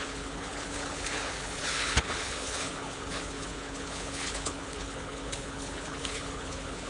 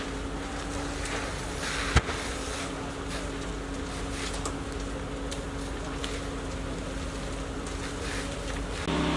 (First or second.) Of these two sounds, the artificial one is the first